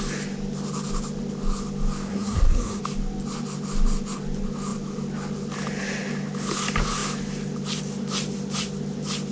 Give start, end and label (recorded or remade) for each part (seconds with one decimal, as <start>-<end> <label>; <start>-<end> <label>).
0.0-2.1 recorded; 2.1-2.8 remade; 2.8-9.3 recorded

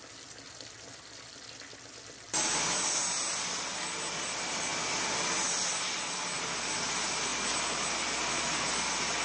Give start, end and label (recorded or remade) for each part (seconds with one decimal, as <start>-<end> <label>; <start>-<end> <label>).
0.0-9.2 recorded